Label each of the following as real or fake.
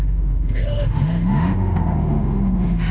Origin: fake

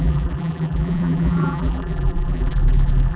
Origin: fake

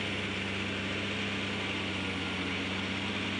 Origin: real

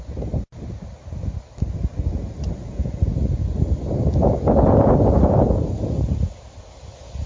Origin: real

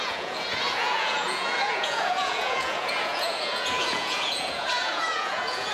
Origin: fake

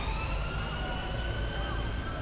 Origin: real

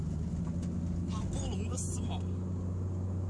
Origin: real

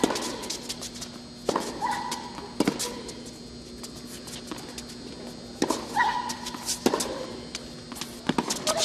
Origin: real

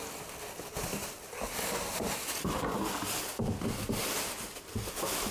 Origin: real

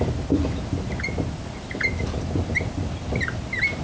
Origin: real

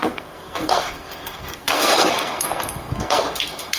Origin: fake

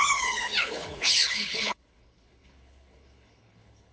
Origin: fake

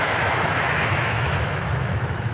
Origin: fake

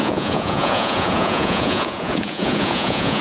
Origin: fake